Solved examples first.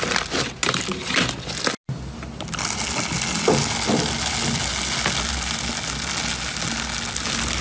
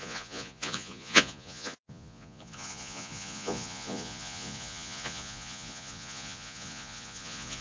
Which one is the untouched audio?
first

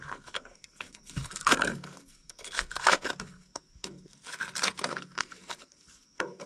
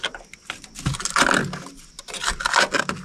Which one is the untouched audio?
second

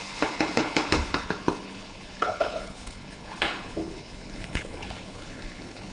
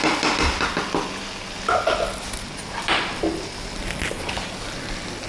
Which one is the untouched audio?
second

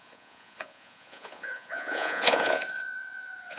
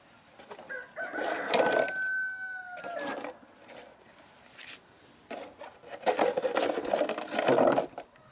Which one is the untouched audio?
second